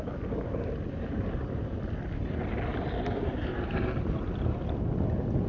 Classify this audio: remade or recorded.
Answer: recorded